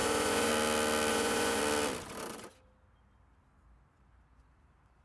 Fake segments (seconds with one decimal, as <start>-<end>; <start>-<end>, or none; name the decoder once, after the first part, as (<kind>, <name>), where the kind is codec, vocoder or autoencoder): 0.0-0.5 (vocoder, Vocos); 1.1-1.6